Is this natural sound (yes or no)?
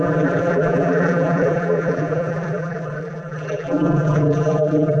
no